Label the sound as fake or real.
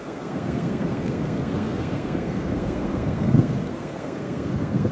fake